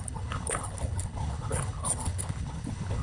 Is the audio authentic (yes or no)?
no